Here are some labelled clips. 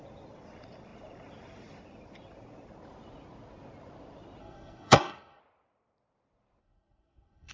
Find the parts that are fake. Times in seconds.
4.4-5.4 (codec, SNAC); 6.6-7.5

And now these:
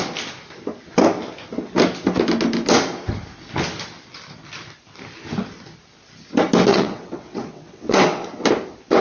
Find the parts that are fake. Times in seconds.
6.7-8.2 (vocoder, WaveNeXt)

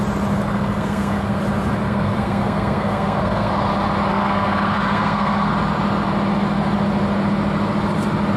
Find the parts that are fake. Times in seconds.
0.5-1.4 (codec, SNAC); 1.8-3.5; 4.1-5.5